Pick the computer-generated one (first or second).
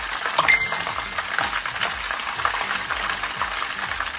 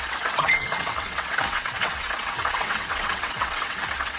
second